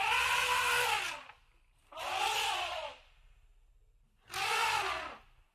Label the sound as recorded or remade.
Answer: recorded